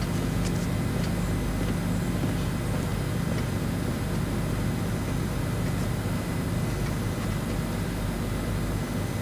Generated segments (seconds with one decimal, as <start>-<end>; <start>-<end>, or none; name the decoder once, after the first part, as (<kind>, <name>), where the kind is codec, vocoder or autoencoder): none